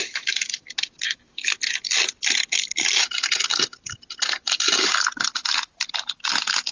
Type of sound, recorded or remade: recorded